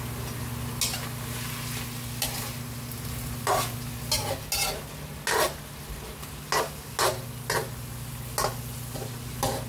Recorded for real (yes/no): yes